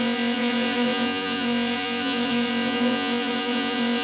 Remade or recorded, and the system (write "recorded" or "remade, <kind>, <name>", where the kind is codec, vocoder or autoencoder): remade, vocoder, Vocos